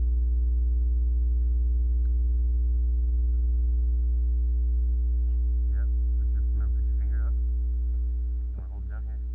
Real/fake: real